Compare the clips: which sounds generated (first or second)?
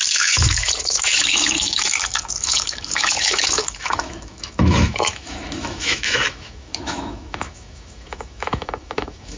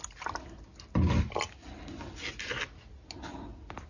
first